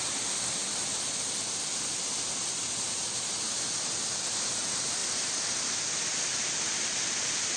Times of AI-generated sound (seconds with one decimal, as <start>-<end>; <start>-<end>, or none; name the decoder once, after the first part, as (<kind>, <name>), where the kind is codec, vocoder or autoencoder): 5.0-6.9 (vocoder, BigVGAN v2)

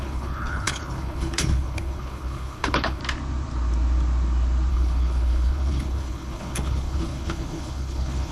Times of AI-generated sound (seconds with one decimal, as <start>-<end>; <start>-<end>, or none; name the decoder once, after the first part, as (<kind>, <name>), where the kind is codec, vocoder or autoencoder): 0.0-3.0 (codec, HILCodec); 4.7-8.3